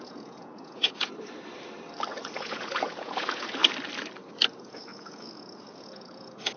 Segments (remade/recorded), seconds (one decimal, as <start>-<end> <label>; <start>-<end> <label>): 0.0-1.1 remade; 1.1-2.1 recorded; 2.1-3.6 remade; 3.6-4.6 recorded; 4.6-6.6 remade